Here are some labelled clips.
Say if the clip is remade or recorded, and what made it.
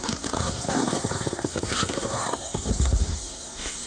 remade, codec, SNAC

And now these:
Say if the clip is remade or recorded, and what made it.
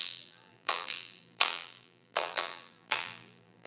remade, vocoder, BigVGAN v2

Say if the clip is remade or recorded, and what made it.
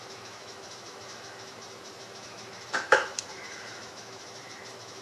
remade, autoencoder, DAC-VAE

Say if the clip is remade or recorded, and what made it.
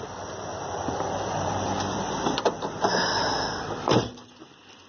remade, vocoder, BigVGAN v2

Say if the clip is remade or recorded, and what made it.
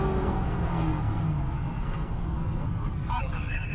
remade, codec, SNAC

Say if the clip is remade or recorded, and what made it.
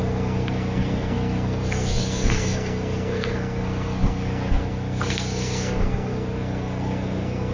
remade, codec, SNAC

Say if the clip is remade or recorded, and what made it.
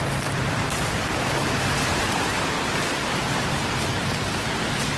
remade, vocoder, BigVGAN v2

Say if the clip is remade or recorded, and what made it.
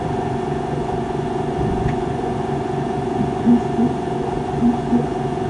remade, vocoder, Vocos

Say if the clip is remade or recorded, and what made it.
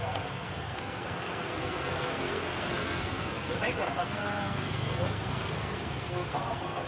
remade, codec, SNAC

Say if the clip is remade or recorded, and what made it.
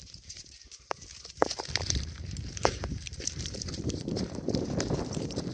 remade, vocoder, BigVGAN v2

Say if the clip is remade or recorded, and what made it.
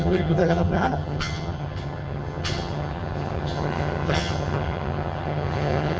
remade, vocoder, HiFi-GAN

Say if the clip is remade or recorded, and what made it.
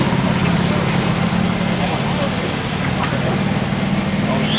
recorded